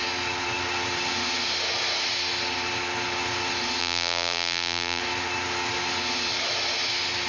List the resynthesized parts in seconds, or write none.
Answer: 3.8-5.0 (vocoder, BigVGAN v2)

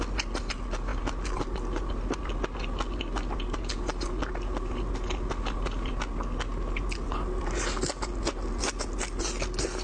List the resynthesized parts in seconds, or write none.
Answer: none

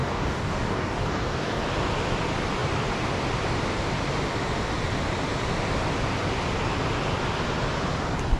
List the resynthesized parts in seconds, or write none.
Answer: 0.0-1.6 (codec, DAC)

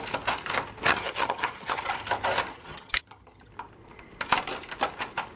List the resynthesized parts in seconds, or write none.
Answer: 0.9-1.8 (vocoder, HiFi-GAN); 2.5-3.5

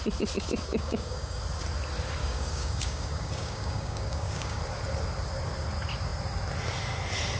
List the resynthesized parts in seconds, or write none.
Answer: 0.6-1.4 (codec, DAC); 2.2-4.6

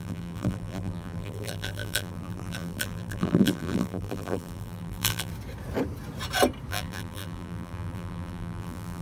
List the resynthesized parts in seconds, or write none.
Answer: 0.0-5.3 (vocoder, BigVGAN v2); 6.7-9.0